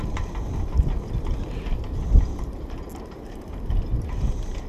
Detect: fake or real real